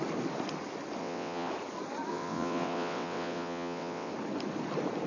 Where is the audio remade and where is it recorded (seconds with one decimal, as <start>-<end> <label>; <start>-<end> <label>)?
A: 0.0-1.0 recorded; 1.0-1.5 remade; 1.5-2.1 recorded; 2.1-4.1 remade; 4.1-5.1 recorded